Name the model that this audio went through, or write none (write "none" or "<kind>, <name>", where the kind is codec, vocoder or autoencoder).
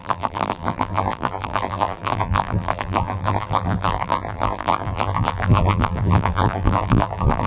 vocoder, BigVGAN v2